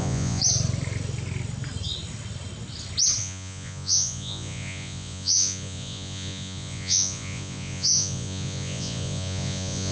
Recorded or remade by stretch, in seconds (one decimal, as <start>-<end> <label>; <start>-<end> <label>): 0.0-0.4 remade; 0.4-3.2 recorded; 3.2-9.9 remade